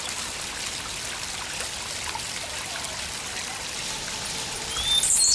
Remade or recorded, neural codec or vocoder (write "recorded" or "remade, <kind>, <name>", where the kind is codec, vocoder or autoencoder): recorded